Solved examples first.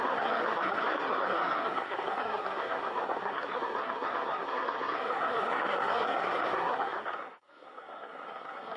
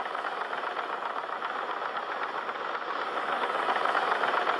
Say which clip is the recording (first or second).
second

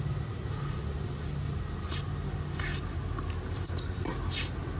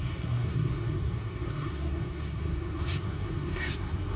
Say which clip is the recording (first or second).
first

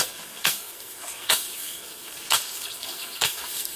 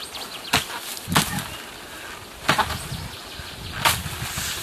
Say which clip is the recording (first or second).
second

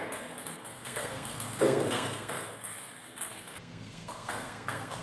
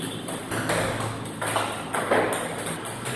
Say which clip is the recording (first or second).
second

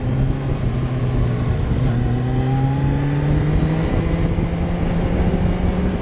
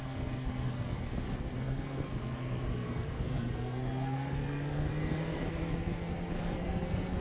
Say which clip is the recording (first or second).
first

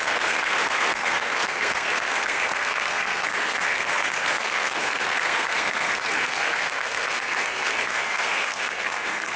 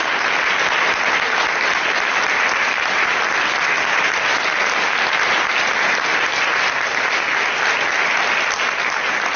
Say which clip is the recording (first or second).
second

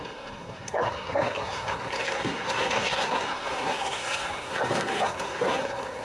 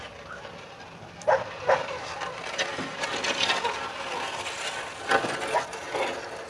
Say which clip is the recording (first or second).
second